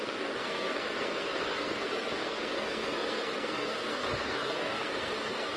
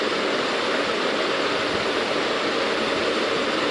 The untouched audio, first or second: second